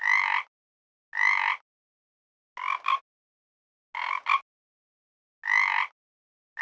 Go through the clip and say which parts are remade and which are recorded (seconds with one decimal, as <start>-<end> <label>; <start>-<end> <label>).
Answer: 0.0-6.6 recorded